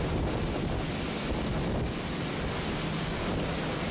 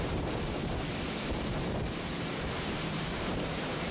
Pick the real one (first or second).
first